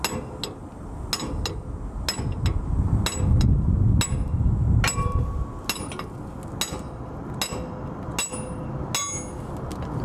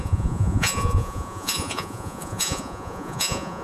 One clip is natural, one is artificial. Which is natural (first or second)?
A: first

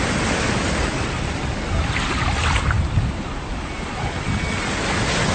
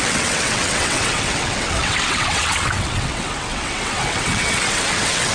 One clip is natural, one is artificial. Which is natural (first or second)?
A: first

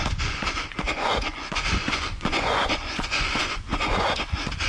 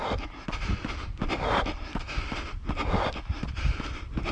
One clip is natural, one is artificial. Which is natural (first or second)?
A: second